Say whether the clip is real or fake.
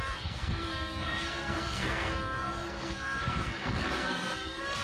fake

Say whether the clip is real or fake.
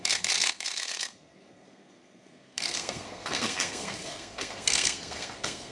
fake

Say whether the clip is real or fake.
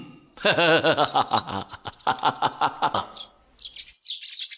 real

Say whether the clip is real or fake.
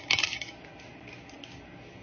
real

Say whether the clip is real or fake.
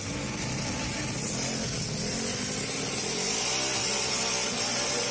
real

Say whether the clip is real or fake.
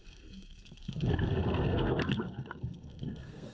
fake